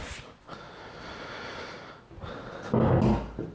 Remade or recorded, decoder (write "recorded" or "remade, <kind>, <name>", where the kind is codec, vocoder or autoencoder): recorded